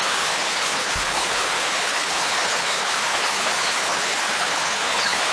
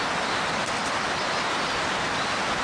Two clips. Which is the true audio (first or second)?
second